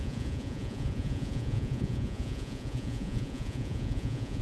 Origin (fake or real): fake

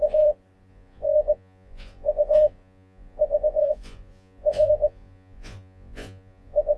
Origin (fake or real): fake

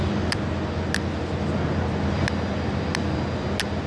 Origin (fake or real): real